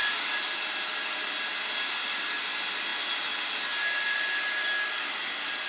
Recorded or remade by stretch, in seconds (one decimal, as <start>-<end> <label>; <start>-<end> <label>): 0.0-5.7 recorded